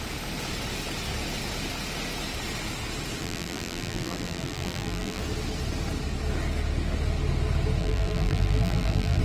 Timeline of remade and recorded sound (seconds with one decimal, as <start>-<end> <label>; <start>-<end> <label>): 0.0-3.2 recorded; 3.2-5.2 remade; 5.2-7.8 recorded; 7.8-9.2 remade